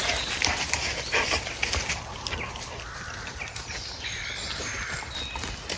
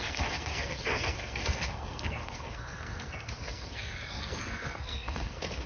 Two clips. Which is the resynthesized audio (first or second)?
second